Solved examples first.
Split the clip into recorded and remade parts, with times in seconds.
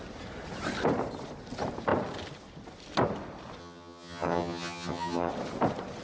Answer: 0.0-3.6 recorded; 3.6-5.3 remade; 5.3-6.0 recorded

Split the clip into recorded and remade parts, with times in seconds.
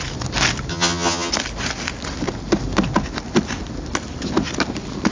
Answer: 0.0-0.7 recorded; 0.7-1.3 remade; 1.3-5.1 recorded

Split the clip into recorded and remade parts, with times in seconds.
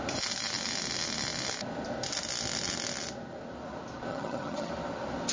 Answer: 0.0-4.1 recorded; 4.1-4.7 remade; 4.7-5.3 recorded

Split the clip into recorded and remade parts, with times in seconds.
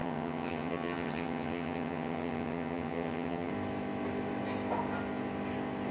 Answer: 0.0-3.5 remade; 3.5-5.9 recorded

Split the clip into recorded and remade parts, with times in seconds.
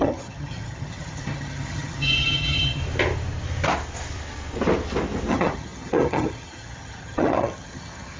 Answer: 0.0-2.8 remade; 2.8-5.3 recorded; 5.3-8.2 remade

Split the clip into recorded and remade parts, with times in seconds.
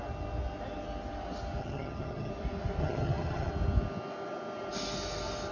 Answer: 0.0-1.6 recorded; 1.6-2.3 remade; 2.3-2.8 recorded; 2.8-3.5 remade; 3.5-5.5 recorded